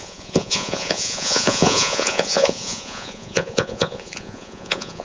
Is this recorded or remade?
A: remade